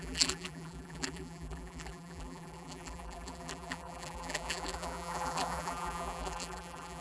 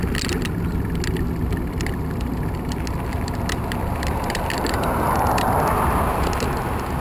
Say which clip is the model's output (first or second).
first